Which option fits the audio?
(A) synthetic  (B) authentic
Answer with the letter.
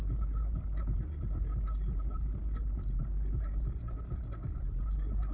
B